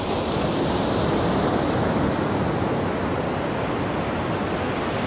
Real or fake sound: real